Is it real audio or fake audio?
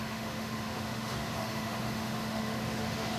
fake